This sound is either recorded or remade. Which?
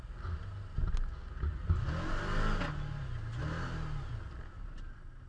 recorded